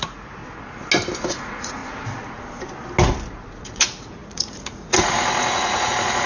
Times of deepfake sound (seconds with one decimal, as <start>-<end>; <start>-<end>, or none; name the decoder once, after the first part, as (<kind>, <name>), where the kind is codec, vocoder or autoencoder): 0.0-0.4 (vocoder, Vocos); 1.4-1.8; 3.6-6.3